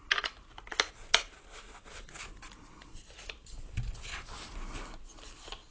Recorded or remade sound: recorded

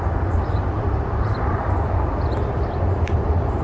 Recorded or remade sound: recorded